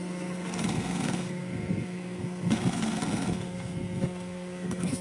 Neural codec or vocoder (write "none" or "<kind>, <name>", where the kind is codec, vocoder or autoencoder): codec, SNAC